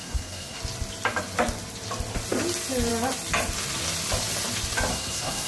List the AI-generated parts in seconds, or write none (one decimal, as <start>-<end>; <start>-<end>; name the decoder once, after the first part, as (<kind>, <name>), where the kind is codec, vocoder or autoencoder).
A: 0.0-0.6 (codec, SNAC); 4.9-5.5